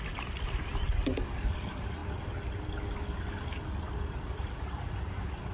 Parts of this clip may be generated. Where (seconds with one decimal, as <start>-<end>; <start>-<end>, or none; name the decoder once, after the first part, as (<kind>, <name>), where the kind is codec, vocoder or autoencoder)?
0.0-2.0 (vocoder, BigVGAN v2); 3.3-5.5